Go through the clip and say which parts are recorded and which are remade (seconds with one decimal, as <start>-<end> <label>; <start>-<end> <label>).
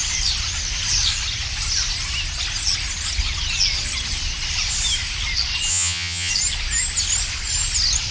0.0-5.7 recorded; 5.7-6.3 remade; 6.3-8.1 recorded